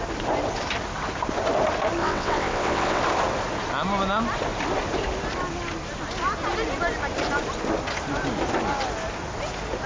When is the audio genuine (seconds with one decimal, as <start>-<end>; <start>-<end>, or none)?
0.0-2.0; 3.0-9.9